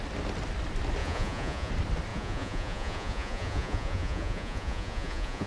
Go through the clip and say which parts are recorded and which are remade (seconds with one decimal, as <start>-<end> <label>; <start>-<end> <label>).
0.0-1.0 recorded; 1.0-1.7 remade; 1.7-2.1 recorded; 2.1-5.5 remade